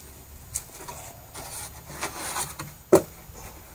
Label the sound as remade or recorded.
recorded